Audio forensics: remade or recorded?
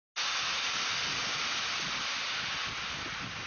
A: recorded